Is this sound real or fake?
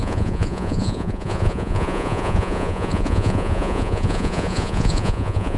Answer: fake